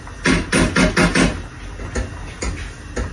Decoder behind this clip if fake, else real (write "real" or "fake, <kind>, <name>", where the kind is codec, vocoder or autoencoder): real